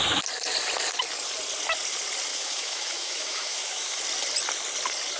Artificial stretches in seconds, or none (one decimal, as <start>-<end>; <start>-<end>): 2.3-4.0